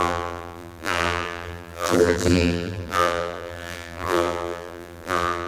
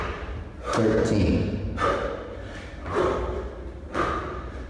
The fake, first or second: first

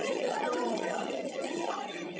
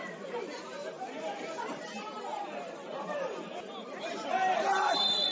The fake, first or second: first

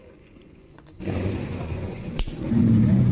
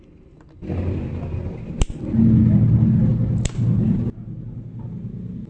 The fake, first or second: first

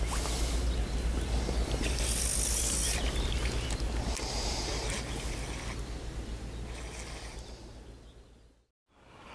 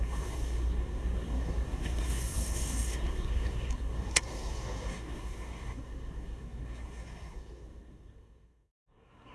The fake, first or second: second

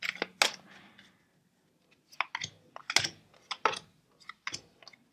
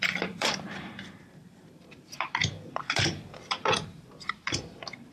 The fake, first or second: second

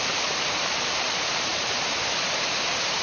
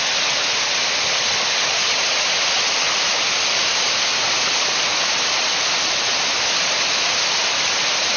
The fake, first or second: first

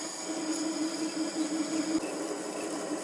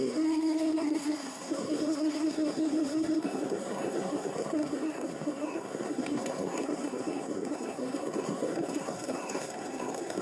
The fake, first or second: second